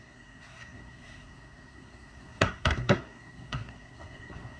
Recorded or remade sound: remade